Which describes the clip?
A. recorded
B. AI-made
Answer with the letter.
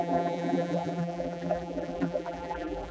B